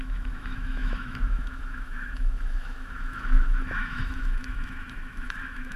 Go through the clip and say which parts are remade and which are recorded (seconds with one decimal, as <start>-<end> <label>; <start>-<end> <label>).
0.0-5.8 remade